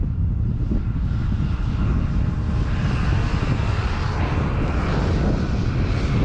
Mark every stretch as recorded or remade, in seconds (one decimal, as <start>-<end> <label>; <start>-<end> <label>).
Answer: 0.0-6.2 recorded